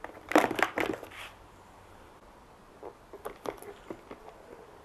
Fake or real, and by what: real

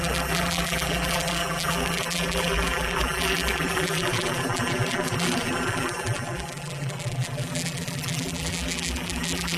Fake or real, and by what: fake, vocoder, BigVGAN v2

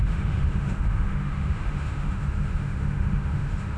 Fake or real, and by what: fake, autoencoder, DAC-VAE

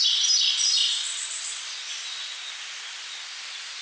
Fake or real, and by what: real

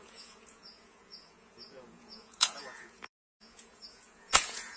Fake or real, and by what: fake, vocoder, Vocos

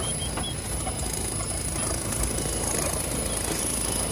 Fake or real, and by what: real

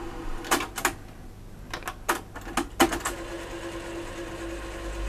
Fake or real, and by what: real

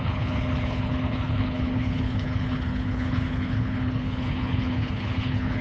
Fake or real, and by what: fake, codec, HILCodec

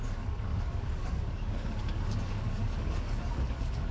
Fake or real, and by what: fake, codec, DAC